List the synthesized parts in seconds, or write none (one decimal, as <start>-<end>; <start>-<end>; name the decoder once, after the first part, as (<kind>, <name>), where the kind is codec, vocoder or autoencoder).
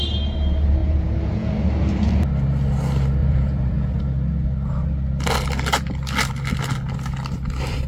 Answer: 0.8-1.5 (vocoder, Vocos); 3.2-4.0